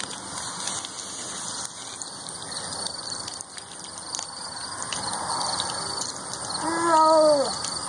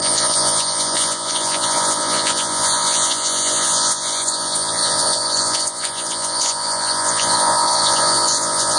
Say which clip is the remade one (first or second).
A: second